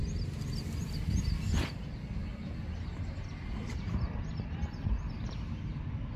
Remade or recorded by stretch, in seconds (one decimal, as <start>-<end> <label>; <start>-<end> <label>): 0.0-6.2 recorded